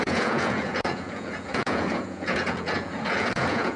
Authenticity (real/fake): fake